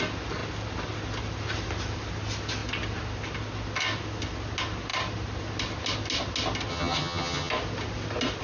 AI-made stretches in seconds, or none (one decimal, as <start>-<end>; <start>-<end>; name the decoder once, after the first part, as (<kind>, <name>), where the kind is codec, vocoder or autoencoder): 6.7-7.5 (vocoder, HiFi-GAN)